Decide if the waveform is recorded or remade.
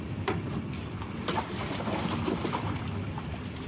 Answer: recorded